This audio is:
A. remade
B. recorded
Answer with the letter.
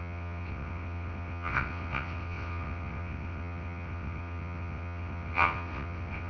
A